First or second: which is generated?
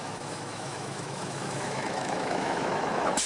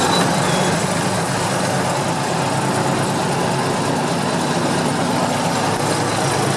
first